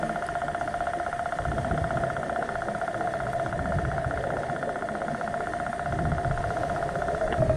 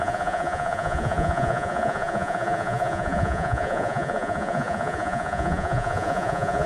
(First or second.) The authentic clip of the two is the first